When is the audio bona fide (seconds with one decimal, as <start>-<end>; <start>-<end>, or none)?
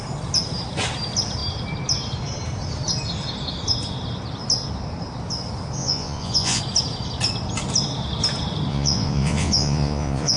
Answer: 0.0-5.8; 6.6-8.7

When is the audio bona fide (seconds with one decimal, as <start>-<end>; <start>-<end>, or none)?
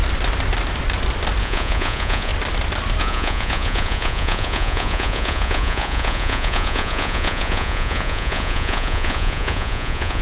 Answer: 0.0-1.4; 2.3-3.0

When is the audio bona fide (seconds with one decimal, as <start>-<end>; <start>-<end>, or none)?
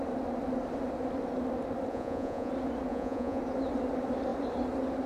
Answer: 0.0-1.9; 2.5-2.9; 3.4-5.1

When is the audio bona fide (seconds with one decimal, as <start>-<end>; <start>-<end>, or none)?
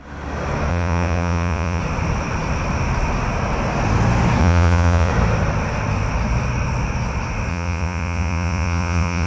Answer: 0.0-0.7; 1.8-4.4; 5.1-7.5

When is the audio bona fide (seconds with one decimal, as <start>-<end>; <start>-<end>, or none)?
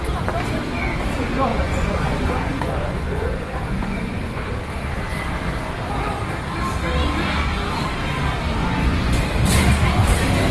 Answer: 0.0-1.5; 4.5-8.6; 9.2-10.5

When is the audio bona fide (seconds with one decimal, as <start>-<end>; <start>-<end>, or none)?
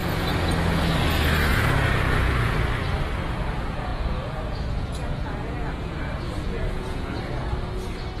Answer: 0.5-1.5; 2.6-3.9; 7.2-8.2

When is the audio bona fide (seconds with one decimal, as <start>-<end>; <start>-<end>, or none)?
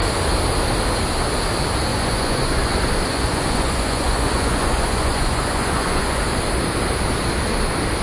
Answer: 0.0-1.9; 2.7-3.1; 6.2-8.0